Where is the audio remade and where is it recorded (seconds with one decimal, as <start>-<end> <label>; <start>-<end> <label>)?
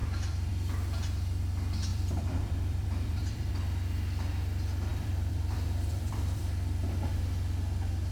0.0-0.5 remade; 0.5-1.9 recorded; 1.9-3.5 remade; 3.5-4.9 recorded; 4.9-6.4 remade; 6.4-8.1 recorded